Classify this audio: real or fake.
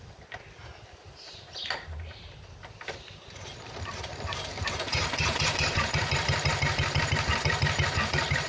fake